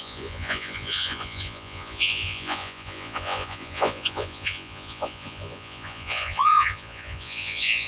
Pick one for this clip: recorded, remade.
remade